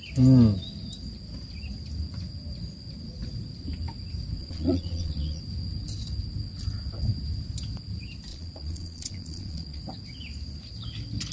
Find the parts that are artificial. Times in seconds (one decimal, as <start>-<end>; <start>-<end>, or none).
4.4-5.4; 8.3-9.8